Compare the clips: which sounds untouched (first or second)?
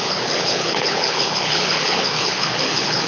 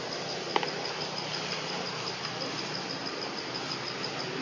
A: second